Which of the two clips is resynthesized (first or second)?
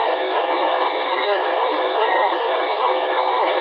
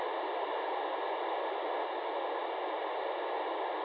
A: first